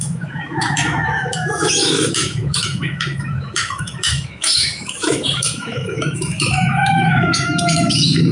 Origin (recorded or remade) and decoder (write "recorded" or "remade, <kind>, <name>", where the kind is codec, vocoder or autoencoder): remade, autoencoder, DAC-VAE